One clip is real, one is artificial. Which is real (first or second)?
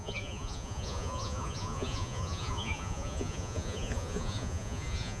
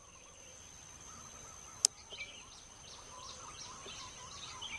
second